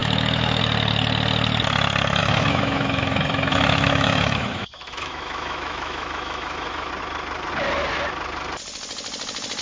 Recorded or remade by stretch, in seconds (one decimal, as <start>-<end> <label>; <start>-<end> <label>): 0.0-0.6 remade; 0.6-2.2 recorded; 2.2-6.9 remade; 6.9-9.6 recorded